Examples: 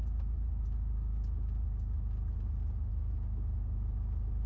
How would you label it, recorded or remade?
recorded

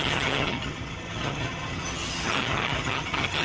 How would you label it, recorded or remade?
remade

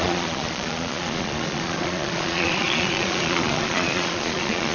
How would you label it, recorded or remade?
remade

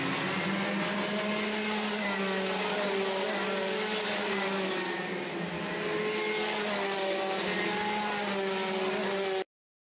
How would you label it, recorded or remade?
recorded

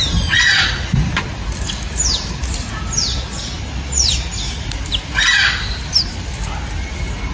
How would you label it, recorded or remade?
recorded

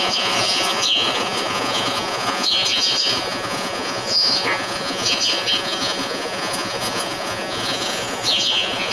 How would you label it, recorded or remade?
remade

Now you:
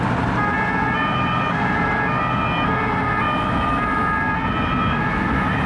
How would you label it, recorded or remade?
recorded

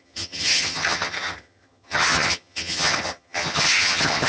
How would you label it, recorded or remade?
remade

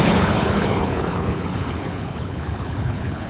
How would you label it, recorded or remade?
remade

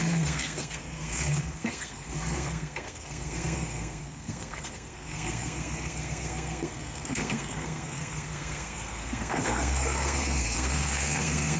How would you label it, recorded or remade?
remade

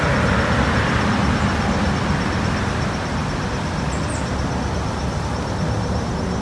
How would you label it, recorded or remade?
recorded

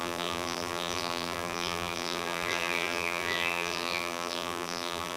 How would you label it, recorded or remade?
remade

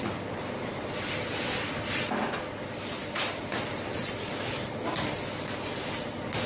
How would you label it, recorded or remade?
recorded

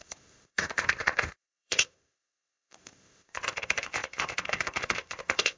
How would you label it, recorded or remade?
remade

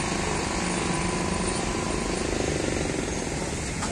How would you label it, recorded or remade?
recorded